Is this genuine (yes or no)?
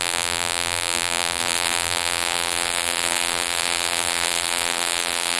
no